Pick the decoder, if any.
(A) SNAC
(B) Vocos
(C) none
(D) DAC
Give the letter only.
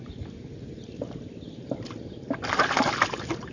C